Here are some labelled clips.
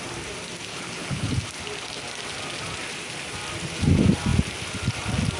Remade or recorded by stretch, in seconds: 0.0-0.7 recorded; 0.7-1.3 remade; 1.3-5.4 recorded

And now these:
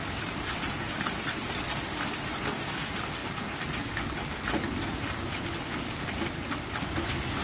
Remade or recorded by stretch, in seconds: 0.0-7.4 recorded

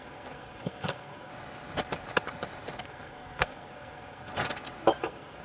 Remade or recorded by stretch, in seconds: 0.0-1.3 remade; 1.3-2.8 recorded; 2.8-4.3 remade; 4.3-5.0 recorded; 5.0-5.4 remade

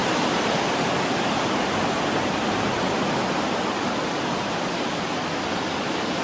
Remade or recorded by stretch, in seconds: 0.0-6.2 recorded

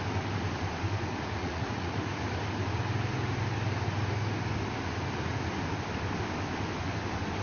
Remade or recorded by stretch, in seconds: 0.0-1.4 recorded; 1.4-2.1 remade; 2.1-7.4 recorded

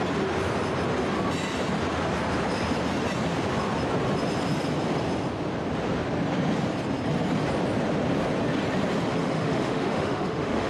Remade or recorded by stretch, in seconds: 0.0-9.2 recorded; 9.2-10.7 remade

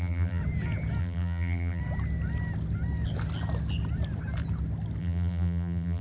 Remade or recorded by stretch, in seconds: 0.0-0.4 remade; 0.4-1.0 recorded; 1.0-1.8 remade; 1.8-5.0 recorded; 5.0-6.0 remade